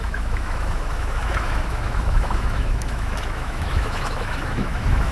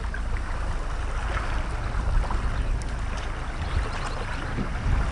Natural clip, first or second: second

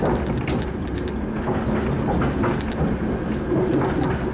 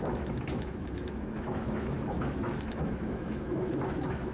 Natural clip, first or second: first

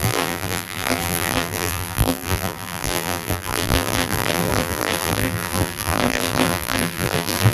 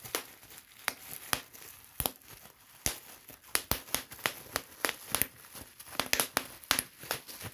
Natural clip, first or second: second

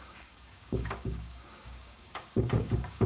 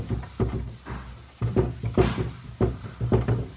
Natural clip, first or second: second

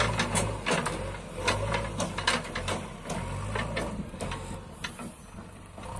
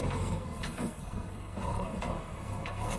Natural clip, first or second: first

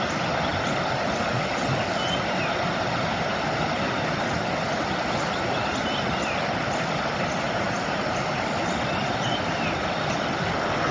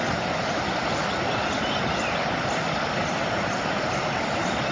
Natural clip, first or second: first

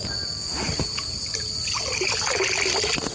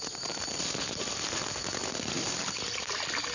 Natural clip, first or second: first